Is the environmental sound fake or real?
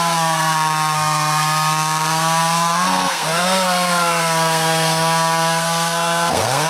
fake